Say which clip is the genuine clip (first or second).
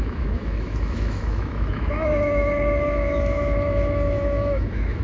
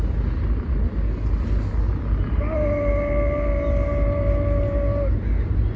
second